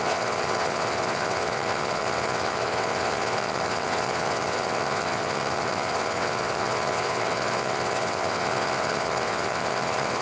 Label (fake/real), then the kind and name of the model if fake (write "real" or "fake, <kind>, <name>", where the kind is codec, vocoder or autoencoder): fake, vocoder, WaveNeXt